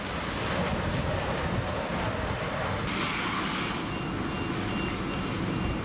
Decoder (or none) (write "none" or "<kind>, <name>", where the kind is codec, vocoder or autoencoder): none